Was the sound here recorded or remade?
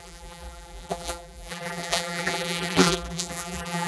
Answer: remade